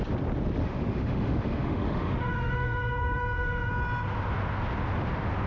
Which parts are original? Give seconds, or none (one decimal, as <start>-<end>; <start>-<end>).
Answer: 0.0-0.6; 3.7-5.5

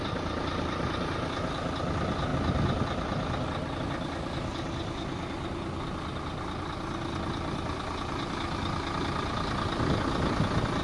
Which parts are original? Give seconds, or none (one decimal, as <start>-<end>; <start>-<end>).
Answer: 0.0-10.8

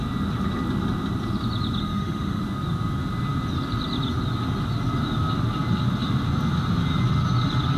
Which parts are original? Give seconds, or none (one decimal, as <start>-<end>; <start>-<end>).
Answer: 0.0-1.8; 2.4-7.8